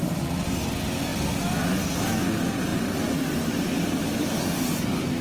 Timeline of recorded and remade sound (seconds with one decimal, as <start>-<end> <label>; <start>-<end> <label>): 0.0-2.7 recorded; 2.7-5.2 remade